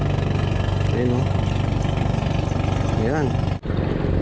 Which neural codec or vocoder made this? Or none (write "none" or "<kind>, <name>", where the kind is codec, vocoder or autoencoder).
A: none